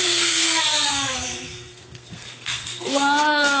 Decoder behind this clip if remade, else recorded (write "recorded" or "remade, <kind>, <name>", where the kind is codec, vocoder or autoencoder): remade, codec, SNAC